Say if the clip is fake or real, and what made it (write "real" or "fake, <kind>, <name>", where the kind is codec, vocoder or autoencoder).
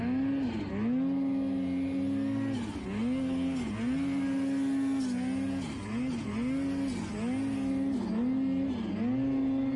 real